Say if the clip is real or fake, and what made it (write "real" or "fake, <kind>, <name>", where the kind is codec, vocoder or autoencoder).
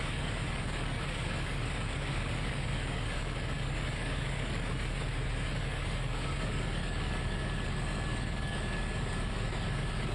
fake, codec, DAC